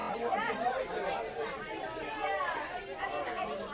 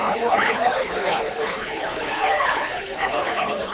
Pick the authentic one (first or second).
first